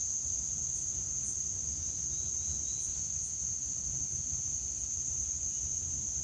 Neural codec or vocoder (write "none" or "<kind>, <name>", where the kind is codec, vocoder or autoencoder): none